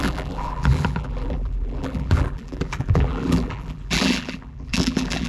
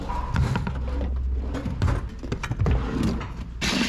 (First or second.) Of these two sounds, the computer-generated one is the first